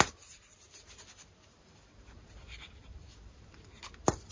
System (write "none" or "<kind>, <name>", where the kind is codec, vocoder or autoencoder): none